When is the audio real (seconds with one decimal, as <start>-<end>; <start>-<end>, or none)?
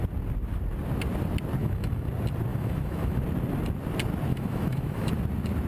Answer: 0.0-1.6; 2.1-2.5; 3.2-4.3; 5.1-5.7